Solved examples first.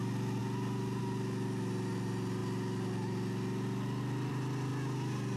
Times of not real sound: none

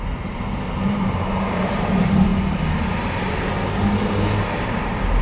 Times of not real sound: 0.0-2.3 (vocoder, BigVGAN v2); 4.5-5.2

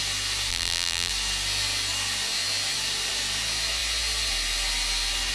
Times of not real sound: 0.5-1.1 (vocoder, BigVGAN v2)

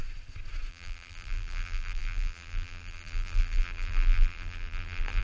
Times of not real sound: 0.7-5.2 (vocoder, BigVGAN v2)

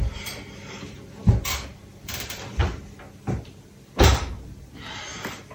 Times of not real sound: 0.0-1.2 (vocoder, BigVGAN v2); 1.9-2.6; 4.6-5.5

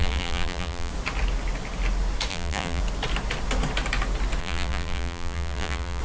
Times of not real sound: 0.0-0.9 (vocoder, BigVGAN v2); 2.3-2.8; 4.4-6.0